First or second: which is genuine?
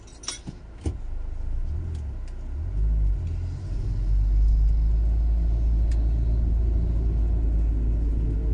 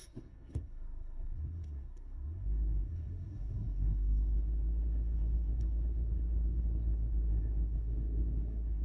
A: first